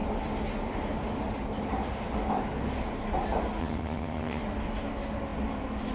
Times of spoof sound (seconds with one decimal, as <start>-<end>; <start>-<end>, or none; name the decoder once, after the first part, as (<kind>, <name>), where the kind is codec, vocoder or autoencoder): 3.6-4.4 (vocoder, HiFi-GAN)